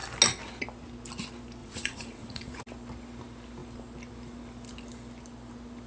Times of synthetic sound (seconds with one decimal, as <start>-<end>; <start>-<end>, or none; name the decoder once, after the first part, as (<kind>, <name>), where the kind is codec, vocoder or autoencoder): 1.6-2.6 (vocoder, Vocos)